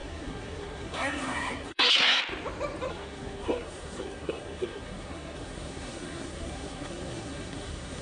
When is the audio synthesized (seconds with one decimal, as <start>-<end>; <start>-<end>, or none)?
0.0-2.2; 2.9-8.0